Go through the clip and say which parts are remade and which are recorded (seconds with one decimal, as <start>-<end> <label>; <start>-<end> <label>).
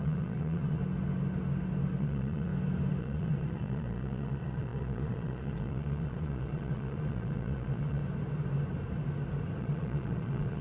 0.0-0.8 remade; 0.8-2.0 recorded; 2.0-2.5 remade; 2.5-3.0 recorded; 3.0-8.0 remade; 8.0-9.6 recorded; 9.6-10.6 remade